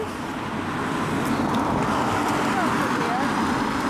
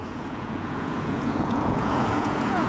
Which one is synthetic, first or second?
second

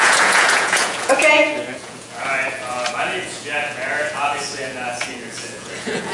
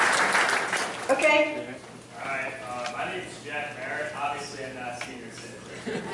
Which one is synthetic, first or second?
first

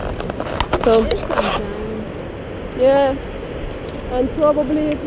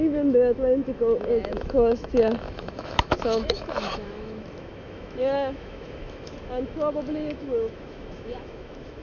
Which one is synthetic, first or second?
second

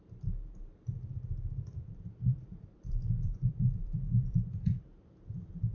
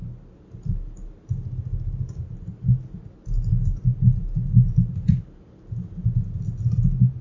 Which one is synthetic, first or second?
first